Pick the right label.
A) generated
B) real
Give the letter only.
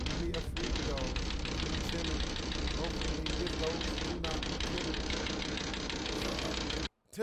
B